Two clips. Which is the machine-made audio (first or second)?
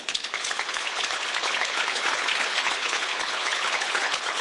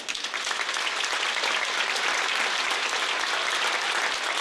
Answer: first